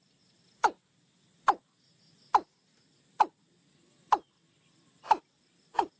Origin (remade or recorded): recorded